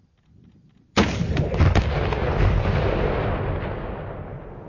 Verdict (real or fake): real